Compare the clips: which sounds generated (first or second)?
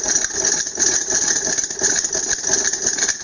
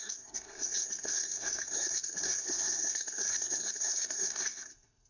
second